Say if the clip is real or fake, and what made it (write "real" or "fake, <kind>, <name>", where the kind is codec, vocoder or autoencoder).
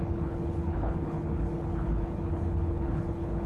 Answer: fake, codec, HILCodec